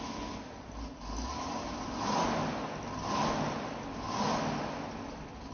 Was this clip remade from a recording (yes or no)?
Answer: no